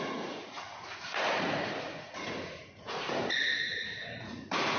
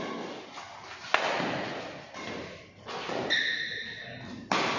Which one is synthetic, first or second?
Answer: first